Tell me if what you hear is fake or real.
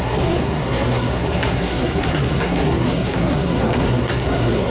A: fake